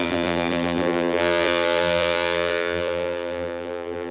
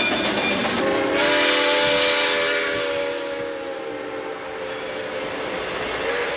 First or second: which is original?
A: second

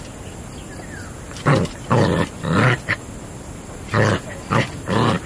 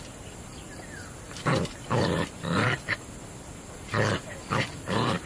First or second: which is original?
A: first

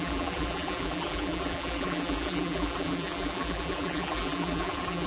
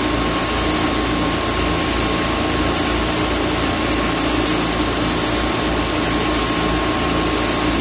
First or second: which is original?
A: second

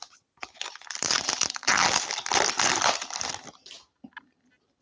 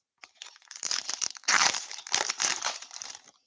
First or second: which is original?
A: first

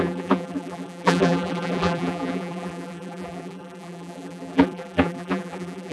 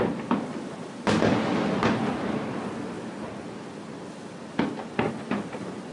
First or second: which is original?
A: second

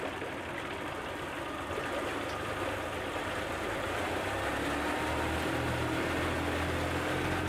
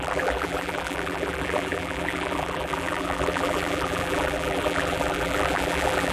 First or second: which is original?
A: first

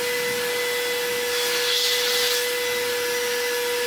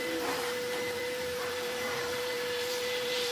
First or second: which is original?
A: first